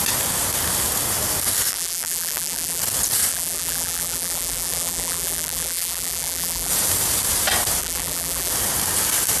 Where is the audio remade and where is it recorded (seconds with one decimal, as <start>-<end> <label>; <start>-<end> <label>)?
0.0-1.7 recorded; 1.7-2.8 remade; 2.8-3.3 recorded; 3.3-6.7 remade; 6.7-7.8 recorded; 7.8-8.5 remade; 8.5-9.4 recorded